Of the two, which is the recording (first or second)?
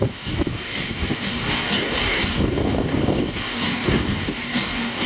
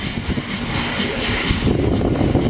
second